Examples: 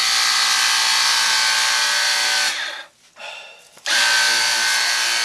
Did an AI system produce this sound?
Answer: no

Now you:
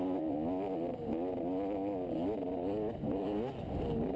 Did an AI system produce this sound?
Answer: no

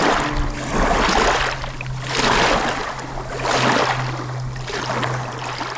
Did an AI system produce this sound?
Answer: no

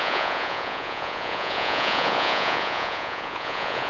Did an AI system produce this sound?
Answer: yes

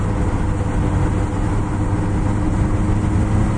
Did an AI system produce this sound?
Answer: no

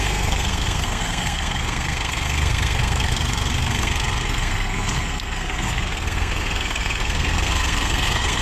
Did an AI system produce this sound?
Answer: yes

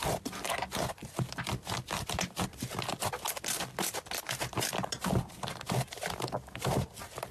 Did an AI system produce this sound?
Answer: no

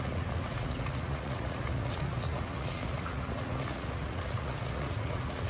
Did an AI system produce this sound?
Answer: yes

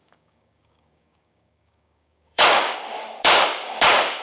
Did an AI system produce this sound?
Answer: yes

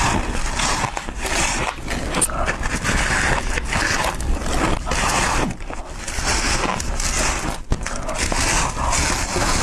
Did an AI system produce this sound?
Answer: no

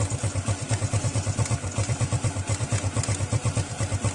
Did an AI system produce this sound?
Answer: no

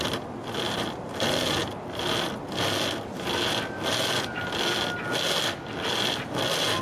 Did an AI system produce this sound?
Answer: no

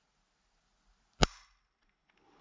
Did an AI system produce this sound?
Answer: no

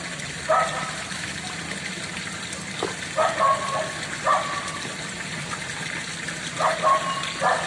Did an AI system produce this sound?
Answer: no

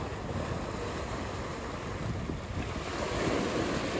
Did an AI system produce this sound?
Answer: no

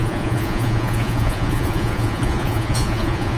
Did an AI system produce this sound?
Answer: yes